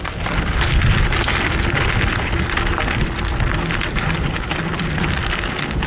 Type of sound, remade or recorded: recorded